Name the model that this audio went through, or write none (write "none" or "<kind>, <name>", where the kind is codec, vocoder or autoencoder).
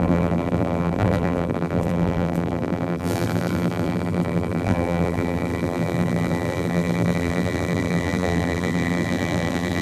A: vocoder, BigVGAN v2